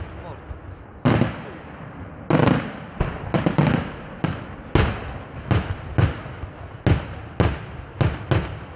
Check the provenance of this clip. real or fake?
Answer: real